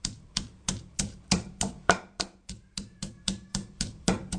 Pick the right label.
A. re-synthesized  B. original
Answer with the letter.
A